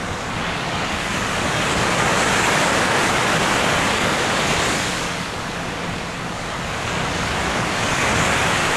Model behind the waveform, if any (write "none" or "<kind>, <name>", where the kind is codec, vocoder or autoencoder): codec, DAC